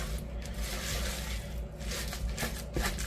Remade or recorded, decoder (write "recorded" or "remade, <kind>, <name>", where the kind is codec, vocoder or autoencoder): recorded